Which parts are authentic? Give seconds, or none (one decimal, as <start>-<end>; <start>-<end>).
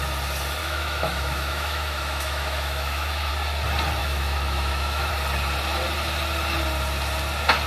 0.0-0.6; 3.3-4.0; 5.1-7.7